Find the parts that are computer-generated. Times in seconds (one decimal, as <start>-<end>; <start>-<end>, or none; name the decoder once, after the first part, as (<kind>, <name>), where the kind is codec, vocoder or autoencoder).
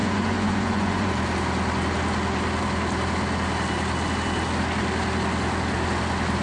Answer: 0.0-1.1 (vocoder, Vocos)